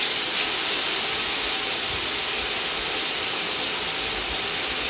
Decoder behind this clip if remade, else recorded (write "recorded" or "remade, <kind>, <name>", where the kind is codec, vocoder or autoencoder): recorded